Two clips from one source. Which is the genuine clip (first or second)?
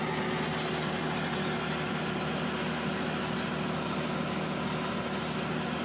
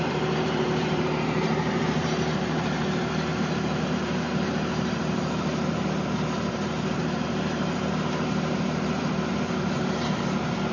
first